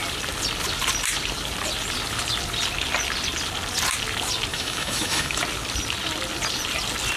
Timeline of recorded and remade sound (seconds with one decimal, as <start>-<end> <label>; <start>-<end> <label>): 0.0-4.5 recorded; 4.5-5.4 remade; 5.4-7.2 recorded